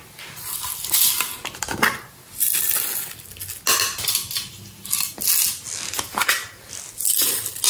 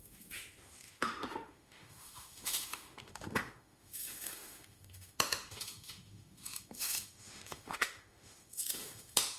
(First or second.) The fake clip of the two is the second